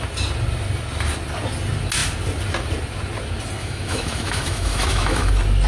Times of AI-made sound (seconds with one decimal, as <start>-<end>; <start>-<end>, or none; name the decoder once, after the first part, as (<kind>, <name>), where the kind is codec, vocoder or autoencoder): 3.6-5.3 (autoencoder, DAC-VAE)